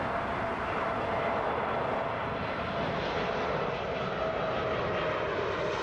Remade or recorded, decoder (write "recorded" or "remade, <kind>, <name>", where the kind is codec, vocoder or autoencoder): recorded